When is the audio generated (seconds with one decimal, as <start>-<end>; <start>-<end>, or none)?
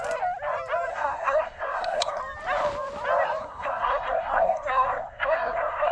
0.9-2.2; 3.4-5.9